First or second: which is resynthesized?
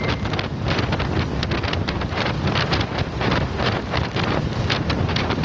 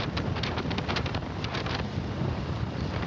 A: second